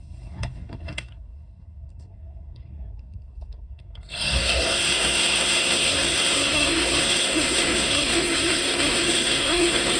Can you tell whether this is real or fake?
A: fake